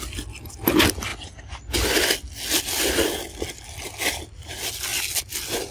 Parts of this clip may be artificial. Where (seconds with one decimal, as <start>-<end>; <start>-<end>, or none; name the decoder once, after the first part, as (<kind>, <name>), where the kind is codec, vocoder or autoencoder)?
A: none